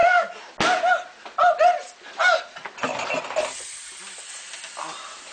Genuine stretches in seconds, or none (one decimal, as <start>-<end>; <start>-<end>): 0.0-5.3